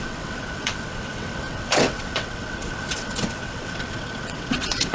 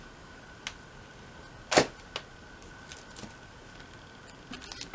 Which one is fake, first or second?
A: first